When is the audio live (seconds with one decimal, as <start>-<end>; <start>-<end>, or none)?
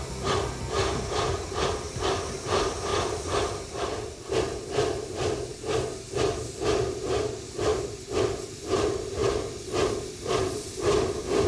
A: 0.0-11.5